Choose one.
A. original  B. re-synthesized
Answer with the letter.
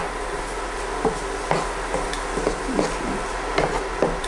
A